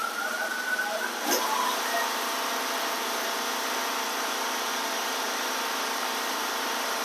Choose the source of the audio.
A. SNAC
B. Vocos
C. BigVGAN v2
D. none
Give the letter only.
C